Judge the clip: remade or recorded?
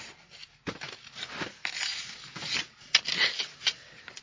recorded